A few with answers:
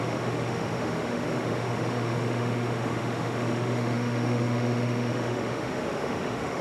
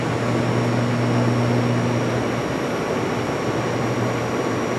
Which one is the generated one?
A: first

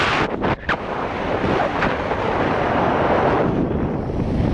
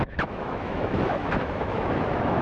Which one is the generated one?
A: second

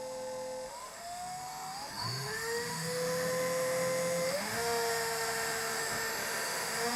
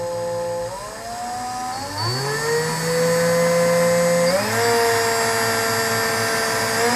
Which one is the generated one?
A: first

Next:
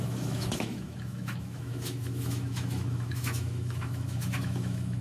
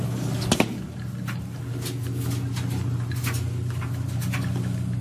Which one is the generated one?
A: first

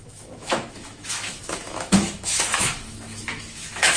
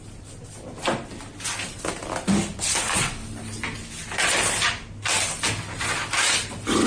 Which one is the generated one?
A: first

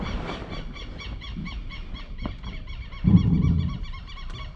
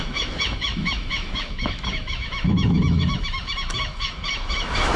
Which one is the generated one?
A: second